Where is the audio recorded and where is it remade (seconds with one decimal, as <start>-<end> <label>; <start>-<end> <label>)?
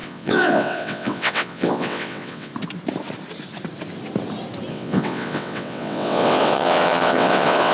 0.0-2.5 remade; 2.5-4.7 recorded; 4.7-7.7 remade